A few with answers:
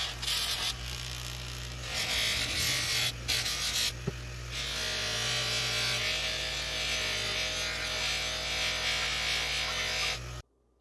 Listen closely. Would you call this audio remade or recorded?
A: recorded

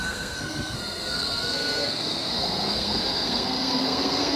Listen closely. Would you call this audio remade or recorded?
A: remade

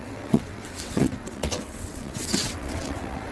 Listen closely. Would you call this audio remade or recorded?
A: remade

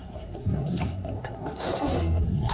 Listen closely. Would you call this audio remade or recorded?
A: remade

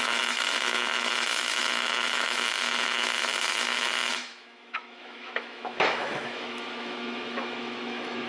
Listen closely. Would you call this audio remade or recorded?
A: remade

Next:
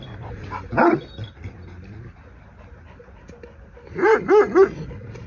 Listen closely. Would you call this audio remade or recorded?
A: recorded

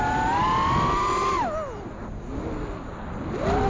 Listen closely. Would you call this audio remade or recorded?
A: recorded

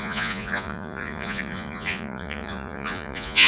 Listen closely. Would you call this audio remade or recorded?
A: remade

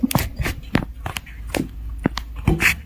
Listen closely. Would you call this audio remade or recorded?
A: recorded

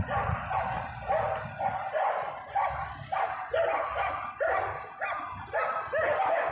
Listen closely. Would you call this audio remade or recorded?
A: recorded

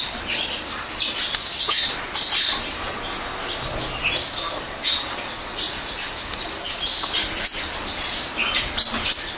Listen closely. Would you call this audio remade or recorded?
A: recorded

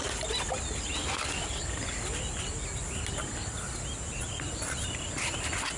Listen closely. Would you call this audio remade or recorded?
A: recorded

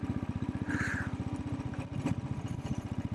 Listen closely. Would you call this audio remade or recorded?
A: recorded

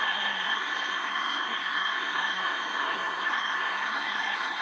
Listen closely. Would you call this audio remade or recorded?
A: remade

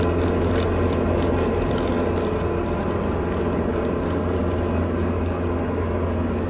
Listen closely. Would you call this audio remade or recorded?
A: recorded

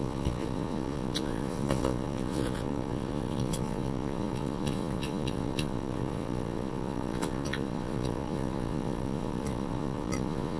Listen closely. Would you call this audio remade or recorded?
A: remade